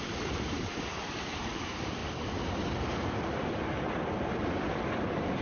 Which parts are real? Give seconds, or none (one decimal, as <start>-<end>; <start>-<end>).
2.0-4.2